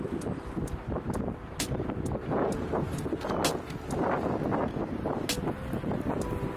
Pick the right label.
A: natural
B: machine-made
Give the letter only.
A